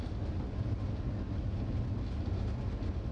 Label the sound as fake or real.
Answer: real